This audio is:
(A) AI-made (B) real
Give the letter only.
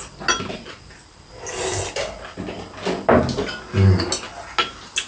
B